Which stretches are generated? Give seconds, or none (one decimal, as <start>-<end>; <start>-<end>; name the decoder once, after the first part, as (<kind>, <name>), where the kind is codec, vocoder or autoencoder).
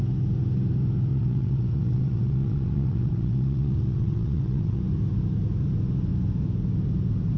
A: 1.1-4.8 (vocoder, WaveNeXt)